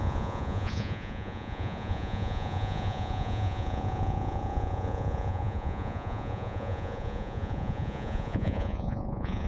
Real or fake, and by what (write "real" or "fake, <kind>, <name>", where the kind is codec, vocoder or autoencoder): fake, vocoder, Vocos